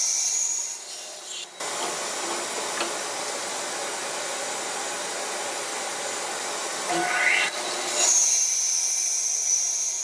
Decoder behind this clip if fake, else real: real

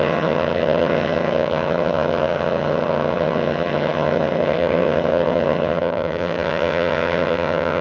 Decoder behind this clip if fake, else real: fake, vocoder, HiFi-GAN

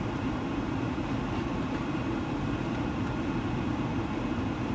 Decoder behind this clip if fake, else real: fake, vocoder, BigVGAN v2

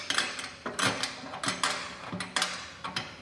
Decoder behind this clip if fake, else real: real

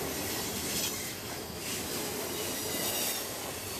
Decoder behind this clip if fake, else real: real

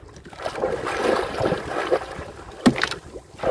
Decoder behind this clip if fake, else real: real